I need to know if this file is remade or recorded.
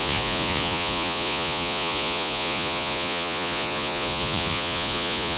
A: remade